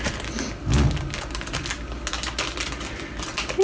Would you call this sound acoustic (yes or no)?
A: yes